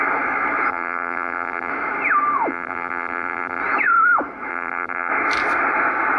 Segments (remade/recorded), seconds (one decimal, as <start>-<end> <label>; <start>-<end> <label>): 0.0-0.7 recorded; 0.7-1.7 remade; 1.7-2.5 recorded; 2.5-3.6 remade; 3.6-4.5 recorded; 4.5-5.1 remade; 5.1-6.2 recorded